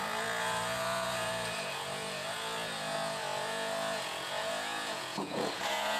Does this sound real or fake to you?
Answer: fake